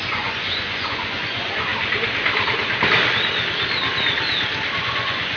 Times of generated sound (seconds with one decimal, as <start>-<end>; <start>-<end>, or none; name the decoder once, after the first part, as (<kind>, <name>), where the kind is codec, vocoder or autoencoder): 0.0-1.7 (vocoder, Vocos); 4.8-5.4